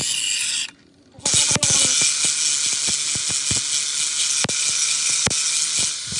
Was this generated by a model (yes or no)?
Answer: no